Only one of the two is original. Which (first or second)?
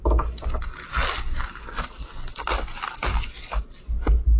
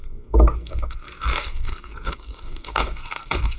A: first